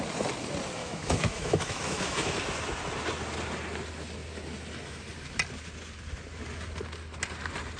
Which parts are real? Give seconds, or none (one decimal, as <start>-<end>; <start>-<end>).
0.0-0.8; 2.4-7.8